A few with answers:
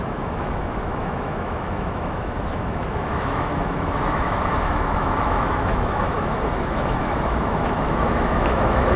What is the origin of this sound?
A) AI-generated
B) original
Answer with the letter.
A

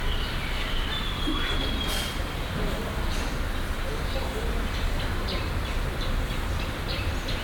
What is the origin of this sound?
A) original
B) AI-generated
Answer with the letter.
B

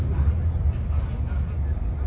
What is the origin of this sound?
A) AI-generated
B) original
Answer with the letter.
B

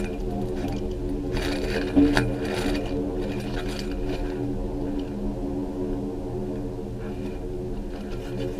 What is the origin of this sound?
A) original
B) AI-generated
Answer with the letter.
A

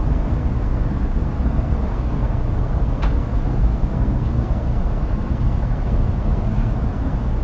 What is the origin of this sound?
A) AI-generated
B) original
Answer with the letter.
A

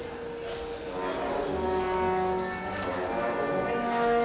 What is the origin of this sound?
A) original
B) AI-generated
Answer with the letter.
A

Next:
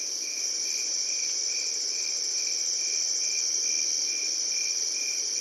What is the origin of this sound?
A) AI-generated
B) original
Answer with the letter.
B